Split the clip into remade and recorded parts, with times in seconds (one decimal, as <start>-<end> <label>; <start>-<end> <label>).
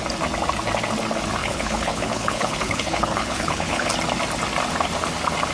0.0-1.4 recorded; 1.4-3.9 remade; 3.9-5.5 recorded